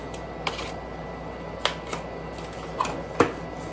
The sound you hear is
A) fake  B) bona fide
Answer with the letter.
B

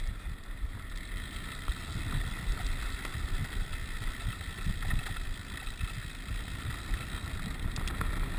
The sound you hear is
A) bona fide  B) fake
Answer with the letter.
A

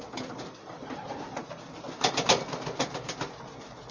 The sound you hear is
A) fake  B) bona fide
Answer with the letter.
B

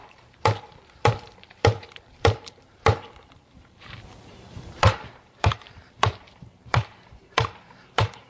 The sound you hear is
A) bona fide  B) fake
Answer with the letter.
B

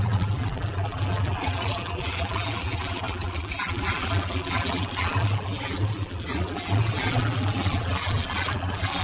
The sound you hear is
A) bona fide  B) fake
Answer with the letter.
B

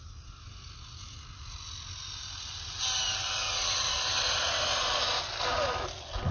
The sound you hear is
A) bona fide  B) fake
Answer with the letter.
A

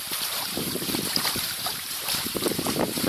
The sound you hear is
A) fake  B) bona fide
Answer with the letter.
A